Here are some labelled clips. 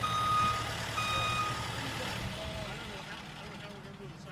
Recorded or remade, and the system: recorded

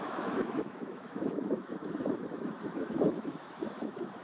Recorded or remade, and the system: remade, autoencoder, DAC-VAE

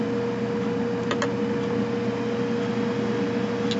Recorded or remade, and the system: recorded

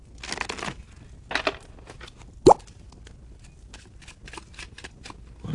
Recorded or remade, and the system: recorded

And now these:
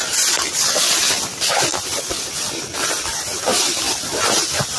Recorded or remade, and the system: recorded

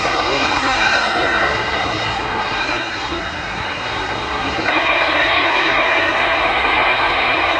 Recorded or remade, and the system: remade, codec, SNAC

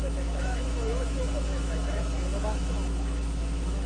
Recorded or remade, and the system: remade, autoencoder, DAC-VAE